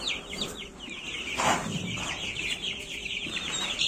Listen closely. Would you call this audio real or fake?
fake